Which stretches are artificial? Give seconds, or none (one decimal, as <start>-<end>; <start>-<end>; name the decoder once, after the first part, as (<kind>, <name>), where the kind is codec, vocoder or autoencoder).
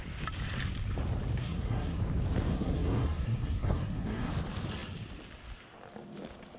1.4-2.0 (codec, SNAC); 2.5-4.3